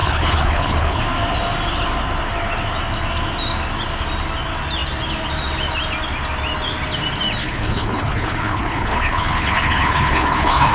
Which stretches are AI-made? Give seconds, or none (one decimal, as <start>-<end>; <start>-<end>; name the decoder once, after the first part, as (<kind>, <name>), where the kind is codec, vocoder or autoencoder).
0.0-1.0 (codec, HILCodec); 7.4-10.7